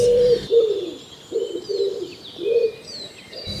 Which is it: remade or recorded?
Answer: remade